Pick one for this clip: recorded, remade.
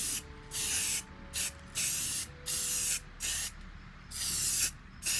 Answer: recorded